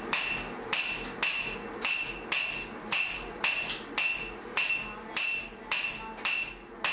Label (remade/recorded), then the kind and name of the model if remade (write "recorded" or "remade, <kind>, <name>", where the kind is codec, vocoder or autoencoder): recorded